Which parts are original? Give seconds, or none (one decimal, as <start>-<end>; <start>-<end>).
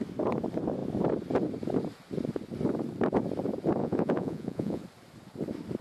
0.0-3.8; 4.8-5.8